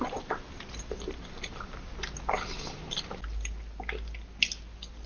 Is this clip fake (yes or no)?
no